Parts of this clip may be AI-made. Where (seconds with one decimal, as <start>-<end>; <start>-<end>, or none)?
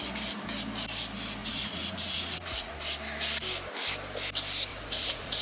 1.4-2.7; 4.7-5.4